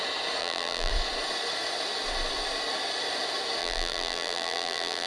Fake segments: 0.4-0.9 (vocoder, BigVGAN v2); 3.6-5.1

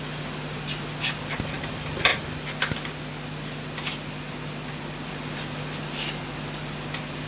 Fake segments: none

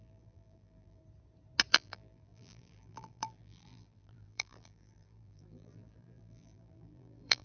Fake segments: 0.0-1.0 (vocoder, BigVGAN v2); 1.7-7.4

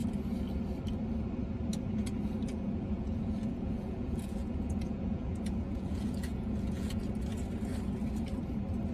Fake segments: 2.5-7.0 (vocoder, Vocos)

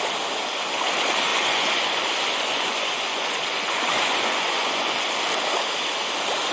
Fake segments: 1.3-5.2 (vocoder, Vocos)

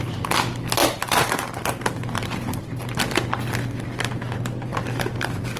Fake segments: 0.8-3.0 (vocoder, BigVGAN v2); 4.7-5.6